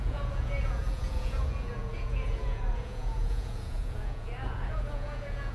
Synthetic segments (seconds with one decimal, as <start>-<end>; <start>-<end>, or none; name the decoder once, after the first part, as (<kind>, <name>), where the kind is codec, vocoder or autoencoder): 0.0-5.5 (vocoder, Vocos)